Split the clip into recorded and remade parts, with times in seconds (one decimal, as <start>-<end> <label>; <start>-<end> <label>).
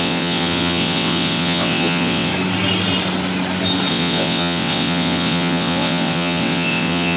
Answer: 0.0-2.3 remade; 2.3-3.9 recorded; 3.9-7.2 remade